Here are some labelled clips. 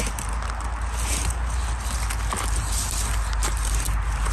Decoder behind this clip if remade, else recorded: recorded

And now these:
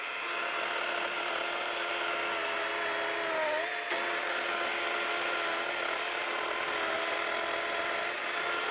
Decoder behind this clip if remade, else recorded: recorded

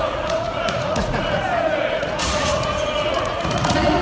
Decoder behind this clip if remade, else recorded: remade, vocoder, Vocos